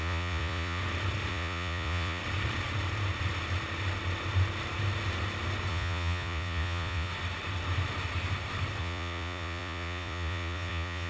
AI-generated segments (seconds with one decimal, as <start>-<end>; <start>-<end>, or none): 0.0-0.8; 1.3-2.2; 5.7-7.1; 8.8-11.1